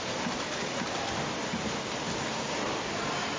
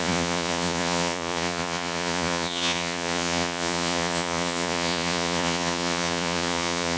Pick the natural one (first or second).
first